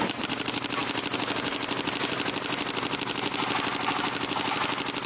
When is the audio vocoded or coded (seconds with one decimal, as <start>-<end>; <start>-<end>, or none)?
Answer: none